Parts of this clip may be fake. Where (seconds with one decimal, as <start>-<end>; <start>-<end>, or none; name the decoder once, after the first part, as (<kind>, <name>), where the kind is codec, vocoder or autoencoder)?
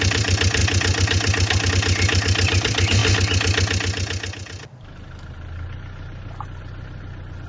0.0-3.0 (vocoder, BigVGAN v2)